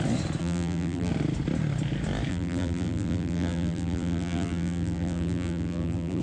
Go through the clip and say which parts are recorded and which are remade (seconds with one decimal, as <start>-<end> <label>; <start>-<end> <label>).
0.0-0.4 recorded; 0.4-1.1 remade; 1.1-2.3 recorded; 2.3-6.2 remade